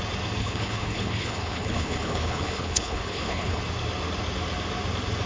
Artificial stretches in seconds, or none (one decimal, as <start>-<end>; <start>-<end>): 0.4-3.6